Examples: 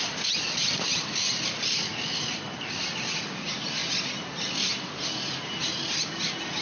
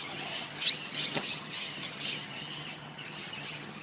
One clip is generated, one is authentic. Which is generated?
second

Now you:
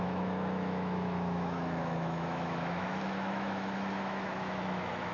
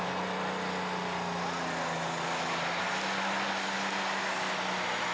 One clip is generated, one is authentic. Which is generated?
first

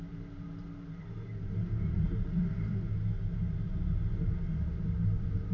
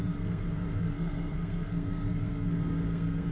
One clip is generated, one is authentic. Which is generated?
second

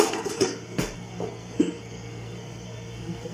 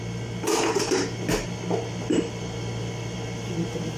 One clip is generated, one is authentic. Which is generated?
first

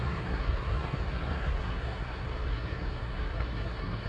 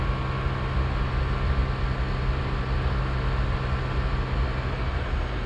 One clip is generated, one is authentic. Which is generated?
first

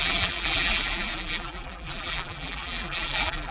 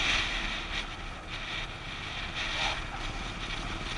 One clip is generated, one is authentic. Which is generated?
first